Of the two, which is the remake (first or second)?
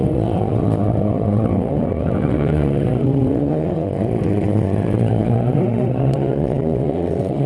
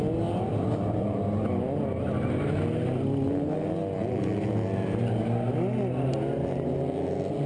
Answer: first